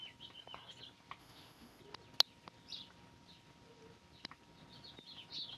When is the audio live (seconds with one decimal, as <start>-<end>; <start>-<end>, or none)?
0.0-1.2; 1.8-5.6